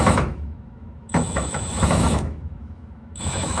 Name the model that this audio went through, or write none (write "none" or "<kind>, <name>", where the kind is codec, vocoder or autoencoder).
autoencoder, DAC-VAE